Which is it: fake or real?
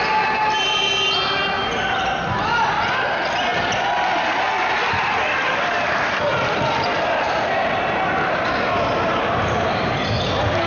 real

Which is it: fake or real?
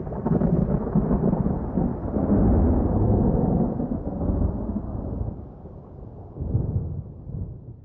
real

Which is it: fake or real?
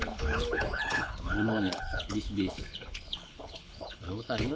fake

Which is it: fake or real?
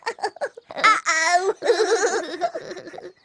real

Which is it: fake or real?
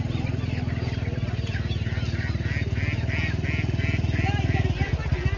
real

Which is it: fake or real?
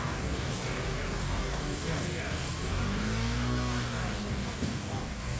fake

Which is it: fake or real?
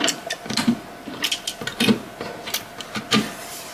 real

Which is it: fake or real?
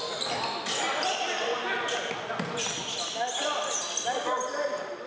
real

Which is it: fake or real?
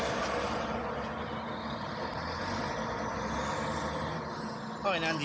real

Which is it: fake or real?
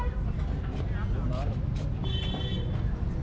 real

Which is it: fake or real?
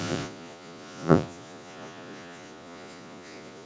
fake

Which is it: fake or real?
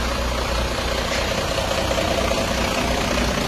real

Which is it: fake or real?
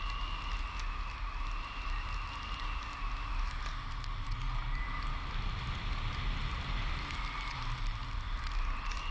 real